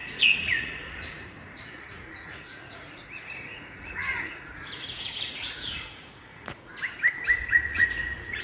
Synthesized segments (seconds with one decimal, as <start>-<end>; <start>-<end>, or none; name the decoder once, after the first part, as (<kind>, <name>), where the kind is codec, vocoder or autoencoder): 0.0-6.7 (vocoder, Vocos); 7.5-8.4